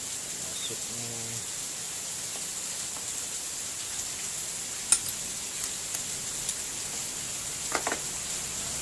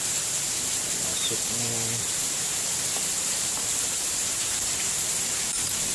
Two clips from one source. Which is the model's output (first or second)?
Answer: second